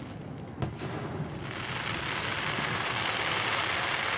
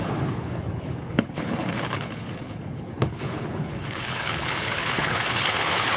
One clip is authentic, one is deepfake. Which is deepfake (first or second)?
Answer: second